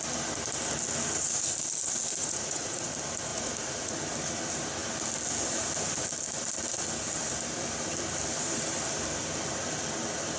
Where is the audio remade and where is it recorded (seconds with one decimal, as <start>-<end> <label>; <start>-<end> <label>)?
0.0-2.2 recorded; 2.2-2.9 remade; 2.9-3.3 recorded; 3.3-4.0 remade; 4.0-10.4 recorded